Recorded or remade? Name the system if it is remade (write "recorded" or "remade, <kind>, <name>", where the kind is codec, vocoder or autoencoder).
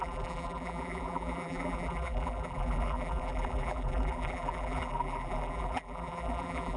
remade, vocoder, BigVGAN v2